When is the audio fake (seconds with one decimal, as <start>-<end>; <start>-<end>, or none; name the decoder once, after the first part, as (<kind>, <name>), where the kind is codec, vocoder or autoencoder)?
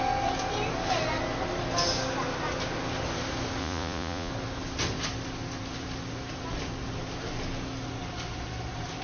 3.6-4.3 (vocoder, Vocos)